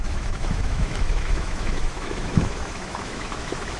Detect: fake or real fake